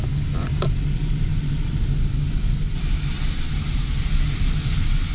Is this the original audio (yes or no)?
yes